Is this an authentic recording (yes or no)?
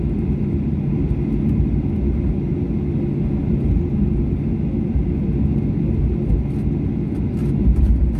yes